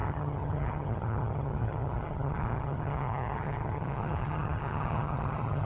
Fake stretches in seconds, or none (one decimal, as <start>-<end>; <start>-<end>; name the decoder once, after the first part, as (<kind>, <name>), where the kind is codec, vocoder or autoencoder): 0.0-5.7 (vocoder, HiFi-GAN)